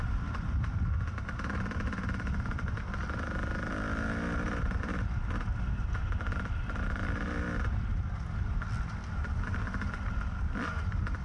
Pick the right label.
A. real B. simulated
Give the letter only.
A